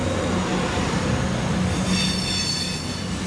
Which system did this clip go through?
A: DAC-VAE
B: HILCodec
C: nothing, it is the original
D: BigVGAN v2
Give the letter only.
C